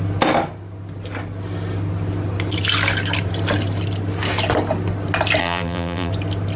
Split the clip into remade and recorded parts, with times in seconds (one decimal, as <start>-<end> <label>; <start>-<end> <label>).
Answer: 0.0-5.4 recorded; 5.4-6.1 remade; 6.1-6.6 recorded

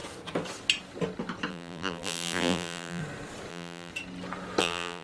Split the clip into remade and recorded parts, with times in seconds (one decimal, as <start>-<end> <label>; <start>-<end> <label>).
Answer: 0.0-1.5 recorded; 1.5-3.0 remade; 3.0-3.5 recorded; 3.5-3.9 remade; 3.9-4.6 recorded; 4.6-5.0 remade

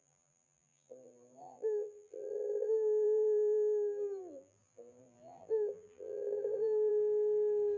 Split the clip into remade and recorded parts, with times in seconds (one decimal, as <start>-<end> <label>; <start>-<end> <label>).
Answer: 0.0-6.9 remade; 6.9-7.8 recorded